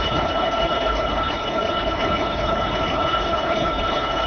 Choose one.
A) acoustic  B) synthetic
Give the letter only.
B